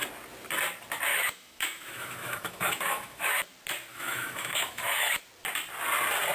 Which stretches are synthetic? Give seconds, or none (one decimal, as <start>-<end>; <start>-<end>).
1.1-3.4; 3.9-5.2